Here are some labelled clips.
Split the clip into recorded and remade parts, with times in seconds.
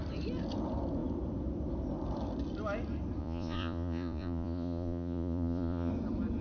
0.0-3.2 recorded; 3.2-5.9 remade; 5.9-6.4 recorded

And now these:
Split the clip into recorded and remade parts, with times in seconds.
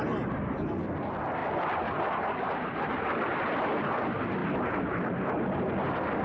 0.0-6.2 recorded